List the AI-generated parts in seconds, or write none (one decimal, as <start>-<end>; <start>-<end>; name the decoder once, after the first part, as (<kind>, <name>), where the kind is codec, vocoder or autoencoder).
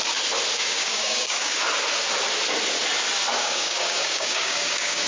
0.5-1.6 (codec, DAC); 3.4-5.1